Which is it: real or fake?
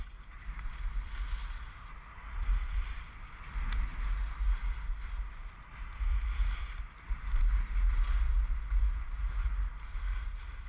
real